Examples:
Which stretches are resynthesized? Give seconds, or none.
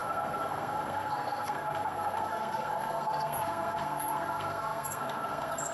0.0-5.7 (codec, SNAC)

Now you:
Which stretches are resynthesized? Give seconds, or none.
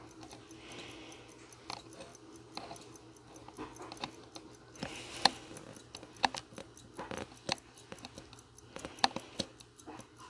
none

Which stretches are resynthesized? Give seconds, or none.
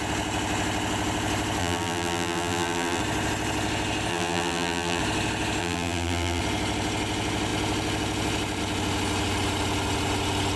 1.6-3.0 (vocoder, BigVGAN v2); 4.1-5.0; 5.6-6.4